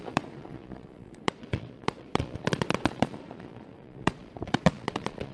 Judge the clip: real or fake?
fake